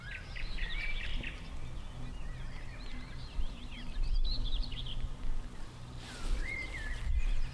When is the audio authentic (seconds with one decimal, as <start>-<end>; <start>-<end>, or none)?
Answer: 1.1-2.1